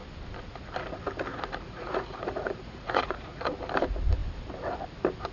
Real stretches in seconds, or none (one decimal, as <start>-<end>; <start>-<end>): 0.0-1.3; 3.5-5.3